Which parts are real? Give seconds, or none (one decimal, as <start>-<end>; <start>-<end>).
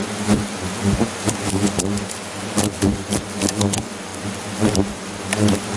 0.0-5.8